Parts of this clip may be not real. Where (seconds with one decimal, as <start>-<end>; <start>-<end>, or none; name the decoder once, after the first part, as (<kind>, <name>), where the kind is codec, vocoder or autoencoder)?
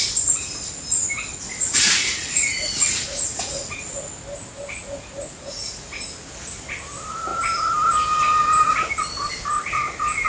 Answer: 1.3-4.1 (vocoder, Vocos); 4.8-5.9